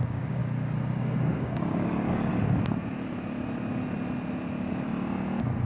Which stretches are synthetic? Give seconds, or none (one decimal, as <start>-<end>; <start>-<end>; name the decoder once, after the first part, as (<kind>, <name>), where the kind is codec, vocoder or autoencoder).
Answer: 0.0-0.4 (codec, DAC); 1.0-2.3